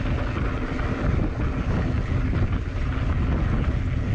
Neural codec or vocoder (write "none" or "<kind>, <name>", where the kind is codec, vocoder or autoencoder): none